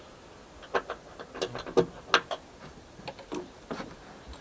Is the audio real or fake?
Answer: real